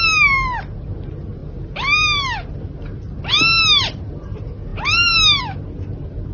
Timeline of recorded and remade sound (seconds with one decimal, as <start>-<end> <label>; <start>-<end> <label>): 0.0-6.3 recorded